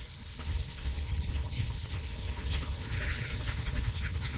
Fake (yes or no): yes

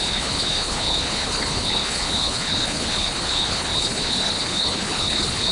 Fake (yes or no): yes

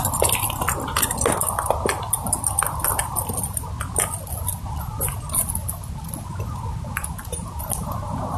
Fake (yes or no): no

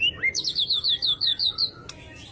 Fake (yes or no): no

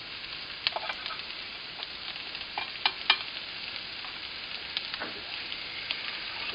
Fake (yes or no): no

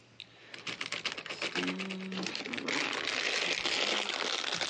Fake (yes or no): no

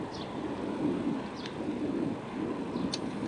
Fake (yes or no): no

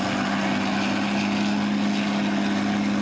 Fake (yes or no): no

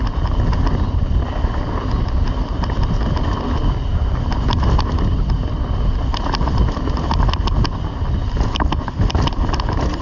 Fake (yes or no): no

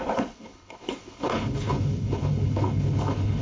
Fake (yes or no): yes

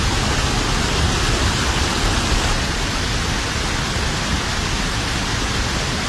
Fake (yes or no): no